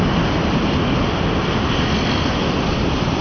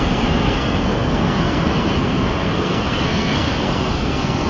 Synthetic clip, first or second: second